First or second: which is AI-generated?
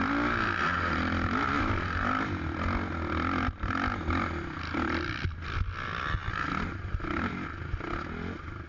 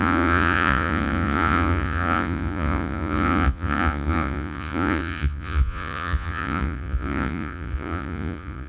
second